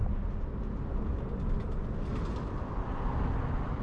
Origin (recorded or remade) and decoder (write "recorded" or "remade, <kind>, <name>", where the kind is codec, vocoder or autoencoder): recorded